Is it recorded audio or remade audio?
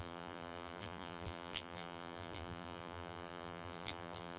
remade